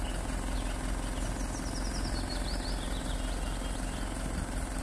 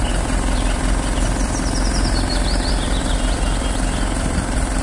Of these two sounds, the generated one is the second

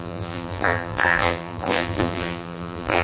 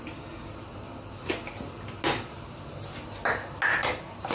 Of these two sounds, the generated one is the first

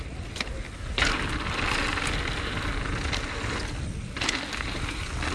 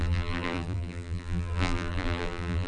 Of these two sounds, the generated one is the second